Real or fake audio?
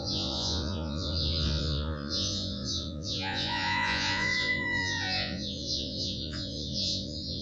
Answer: fake